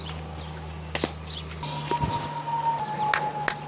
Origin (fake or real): real